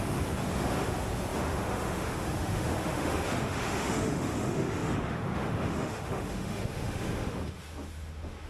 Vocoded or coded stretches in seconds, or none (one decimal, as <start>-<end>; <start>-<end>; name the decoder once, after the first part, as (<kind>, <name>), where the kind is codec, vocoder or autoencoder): 0.0-8.5 (autoencoder, DAC-VAE)